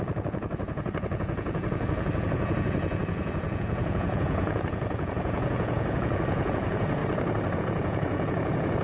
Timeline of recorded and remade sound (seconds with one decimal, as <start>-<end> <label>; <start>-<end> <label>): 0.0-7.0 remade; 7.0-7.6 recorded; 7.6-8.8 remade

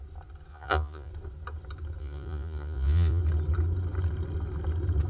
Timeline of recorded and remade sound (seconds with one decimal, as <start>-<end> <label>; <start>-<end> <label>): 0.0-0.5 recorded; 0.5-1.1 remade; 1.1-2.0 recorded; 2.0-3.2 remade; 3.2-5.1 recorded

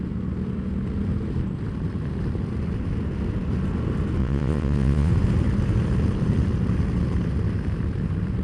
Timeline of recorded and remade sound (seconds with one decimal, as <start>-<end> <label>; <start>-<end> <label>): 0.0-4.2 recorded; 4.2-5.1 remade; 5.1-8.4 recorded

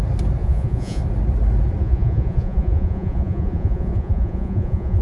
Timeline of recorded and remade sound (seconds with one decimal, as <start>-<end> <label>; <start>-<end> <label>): 0.0-0.4 recorded; 0.4-1.0 remade; 1.0-1.8 recorded; 1.8-5.0 remade

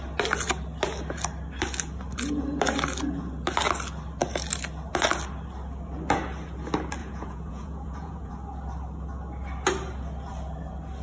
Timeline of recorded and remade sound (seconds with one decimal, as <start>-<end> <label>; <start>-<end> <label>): 0.0-7.0 recorded; 7.0-8.3 remade; 8.3-11.0 recorded

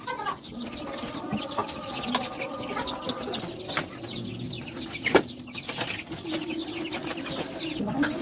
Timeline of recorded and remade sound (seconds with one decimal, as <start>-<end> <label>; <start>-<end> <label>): 0.0-8.2 recorded

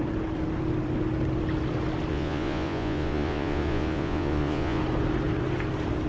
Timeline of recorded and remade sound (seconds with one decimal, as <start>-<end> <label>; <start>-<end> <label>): 0.0-2.1 recorded; 2.1-4.8 remade; 4.8-6.1 recorded